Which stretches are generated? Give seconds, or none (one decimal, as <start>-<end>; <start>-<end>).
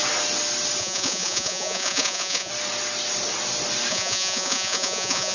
0.8-2.5; 3.9-5.3